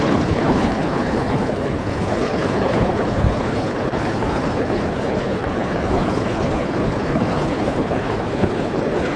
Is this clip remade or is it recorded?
remade